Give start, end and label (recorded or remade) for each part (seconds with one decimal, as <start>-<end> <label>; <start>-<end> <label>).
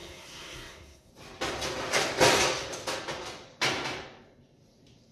0.0-1.1 remade; 1.1-5.1 recorded